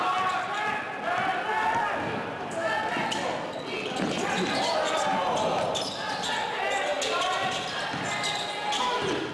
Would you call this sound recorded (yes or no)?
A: yes